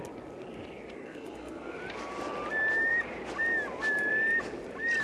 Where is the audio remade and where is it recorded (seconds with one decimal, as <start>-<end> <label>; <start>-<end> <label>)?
0.0-0.9 recorded; 0.9-1.8 remade; 1.8-5.0 recorded